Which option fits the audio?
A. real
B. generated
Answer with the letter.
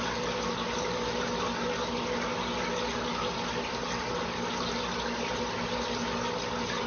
A